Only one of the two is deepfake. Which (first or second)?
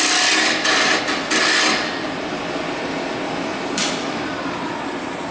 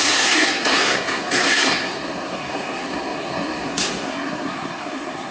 second